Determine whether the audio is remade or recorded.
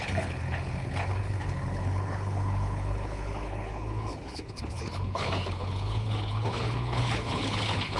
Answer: remade